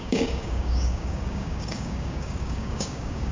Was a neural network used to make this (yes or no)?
yes